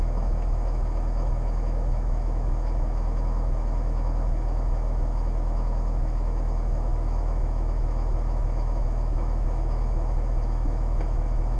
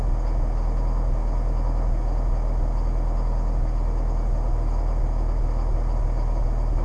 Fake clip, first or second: first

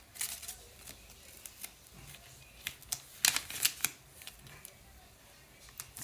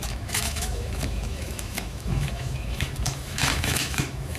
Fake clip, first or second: second